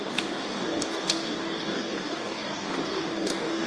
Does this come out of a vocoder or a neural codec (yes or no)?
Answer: yes